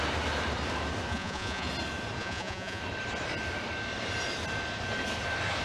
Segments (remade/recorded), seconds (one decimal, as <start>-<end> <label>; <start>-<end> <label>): 0.0-1.1 recorded; 1.1-1.7 remade; 1.7-2.2 recorded; 2.2-2.8 remade; 2.8-5.6 recorded